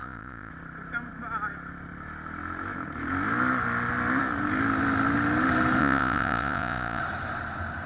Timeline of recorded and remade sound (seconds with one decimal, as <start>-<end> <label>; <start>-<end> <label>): 0.0-0.5 remade; 0.5-5.8 recorded; 5.8-7.0 remade; 7.0-7.9 recorded